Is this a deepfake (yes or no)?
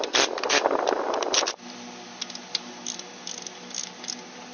no